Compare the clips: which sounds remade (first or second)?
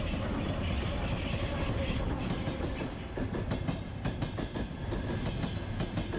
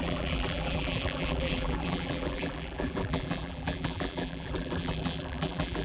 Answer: second